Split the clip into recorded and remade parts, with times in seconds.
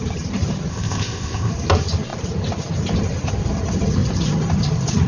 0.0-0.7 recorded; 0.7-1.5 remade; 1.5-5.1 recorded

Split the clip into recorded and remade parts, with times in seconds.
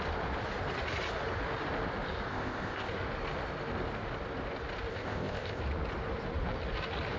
0.0-2.3 recorded; 2.3-2.9 remade; 2.9-4.9 recorded; 4.9-5.6 remade; 5.6-7.2 recorded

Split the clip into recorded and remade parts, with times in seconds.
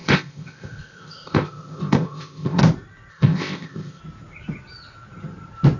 0.0-2.6 remade; 2.6-3.1 recorded; 3.1-4.0 remade; 4.0-5.8 recorded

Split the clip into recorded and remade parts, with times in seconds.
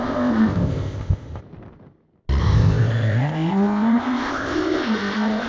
0.0-1.4 remade; 1.4-2.4 recorded; 2.4-5.5 remade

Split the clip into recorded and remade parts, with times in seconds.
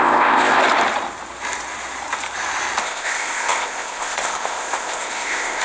0.0-0.6 remade; 0.6-2.8 recorded; 2.8-5.6 remade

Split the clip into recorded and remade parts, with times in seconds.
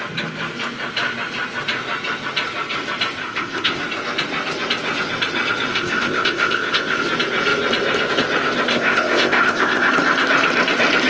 0.0-3.2 recorded; 3.2-3.8 remade; 3.8-5.7 recorded; 5.7-7.0 remade; 7.0-8.7 recorded; 8.7-9.9 remade; 9.9-11.1 recorded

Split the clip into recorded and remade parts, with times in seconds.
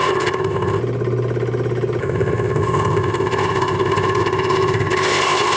0.0-0.8 remade; 0.8-2.0 recorded; 2.0-5.6 remade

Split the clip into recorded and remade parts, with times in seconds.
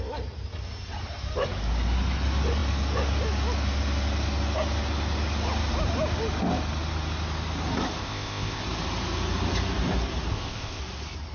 0.0-8.0 recorded; 8.0-8.6 remade; 8.6-10.3 recorded; 10.3-10.8 remade; 10.8-11.3 recorded